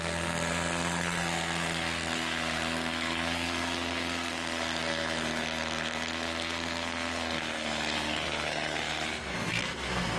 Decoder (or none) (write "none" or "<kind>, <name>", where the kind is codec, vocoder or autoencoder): codec, SNAC